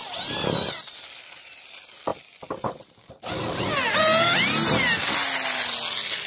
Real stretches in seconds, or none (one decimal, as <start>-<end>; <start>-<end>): 0.0-1.0; 2.1-6.3